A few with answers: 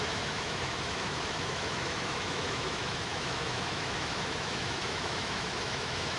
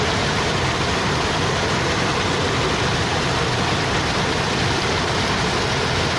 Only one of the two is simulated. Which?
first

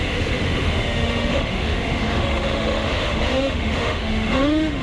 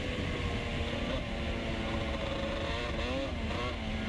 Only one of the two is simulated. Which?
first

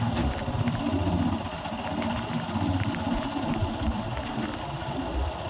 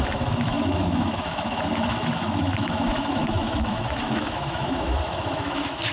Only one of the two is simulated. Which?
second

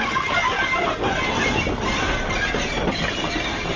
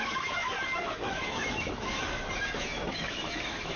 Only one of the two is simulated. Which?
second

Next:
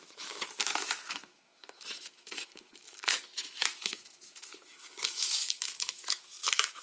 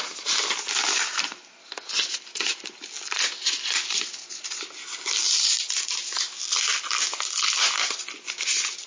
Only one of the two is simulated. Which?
first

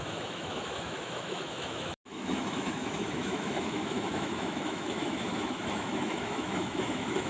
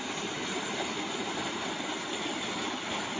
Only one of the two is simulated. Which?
first